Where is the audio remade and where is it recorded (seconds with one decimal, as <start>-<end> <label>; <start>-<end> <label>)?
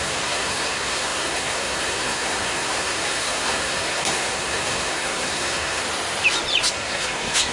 0.0-5.8 remade; 5.8-6.7 recorded; 6.7-7.5 remade